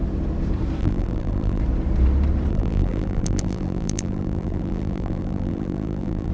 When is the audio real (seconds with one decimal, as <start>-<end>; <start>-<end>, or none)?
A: 0.0-0.8; 1.6-2.5